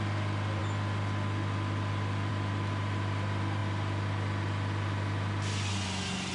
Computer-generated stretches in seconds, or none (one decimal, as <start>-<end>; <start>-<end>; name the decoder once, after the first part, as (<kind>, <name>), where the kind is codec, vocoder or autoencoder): none